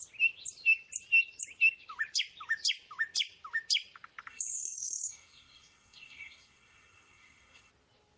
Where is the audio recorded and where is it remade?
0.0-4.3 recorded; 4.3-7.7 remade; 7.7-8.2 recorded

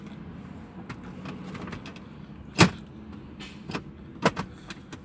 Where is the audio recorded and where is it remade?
0.0-5.0 recorded

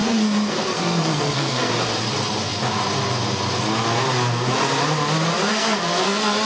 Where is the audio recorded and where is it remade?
0.0-1.7 remade; 1.7-5.5 recorded; 5.5-6.5 remade

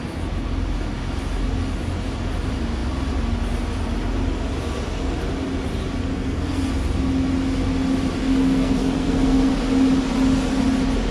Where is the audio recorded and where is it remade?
0.0-6.1 recorded; 6.1-6.7 remade; 6.7-8.2 recorded; 8.2-9.5 remade; 9.5-11.1 recorded

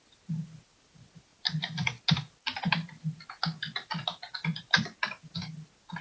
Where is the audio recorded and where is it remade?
0.0-6.0 recorded

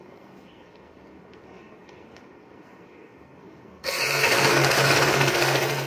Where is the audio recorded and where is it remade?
0.0-5.9 remade